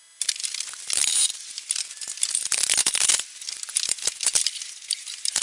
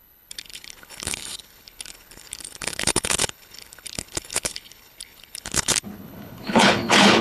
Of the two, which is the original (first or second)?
first